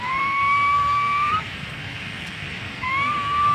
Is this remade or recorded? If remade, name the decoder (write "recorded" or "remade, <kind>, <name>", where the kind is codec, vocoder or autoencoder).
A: remade, codec, SNAC